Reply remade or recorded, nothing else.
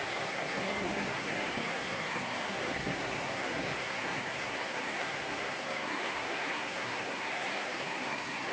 remade